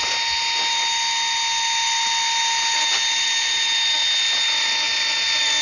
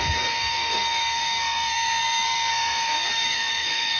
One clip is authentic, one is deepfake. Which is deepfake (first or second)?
second